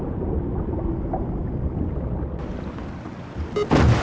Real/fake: real